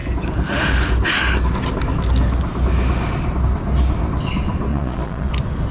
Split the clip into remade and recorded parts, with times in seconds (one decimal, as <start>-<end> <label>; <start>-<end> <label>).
0.0-4.7 recorded; 4.7-5.3 remade; 5.3-5.7 recorded